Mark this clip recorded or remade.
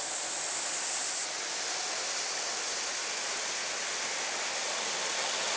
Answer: recorded